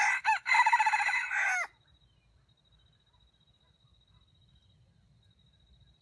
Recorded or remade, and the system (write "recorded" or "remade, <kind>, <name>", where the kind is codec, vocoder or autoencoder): recorded